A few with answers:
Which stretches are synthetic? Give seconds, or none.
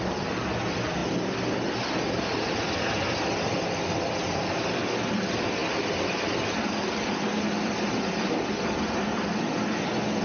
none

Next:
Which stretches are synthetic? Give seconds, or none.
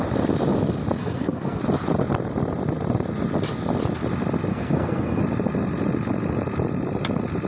1.0-1.6 (codec, SNAC); 4.5-5.2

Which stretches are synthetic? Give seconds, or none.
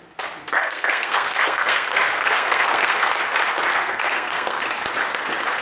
0.4-3.1 (codec, SNAC); 3.7-4.6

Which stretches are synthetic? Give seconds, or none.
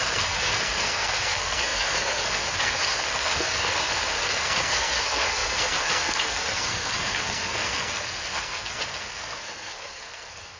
0.0-10.6 (codec, SNAC)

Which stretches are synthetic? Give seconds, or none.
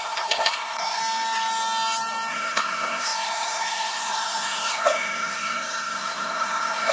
0.0-1.0 (codec, SNAC); 2.3-6.9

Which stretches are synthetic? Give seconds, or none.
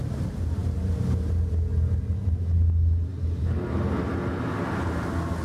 none